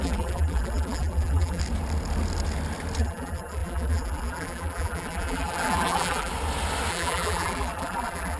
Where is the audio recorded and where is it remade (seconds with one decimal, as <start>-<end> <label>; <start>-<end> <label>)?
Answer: 0.0-1.6 remade; 1.6-3.0 recorded; 3.0-6.3 remade; 6.3-6.9 recorded; 6.9-8.4 remade